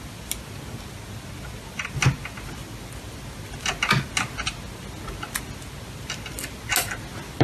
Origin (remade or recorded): recorded